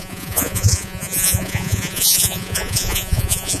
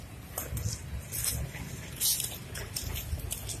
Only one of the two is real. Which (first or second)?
second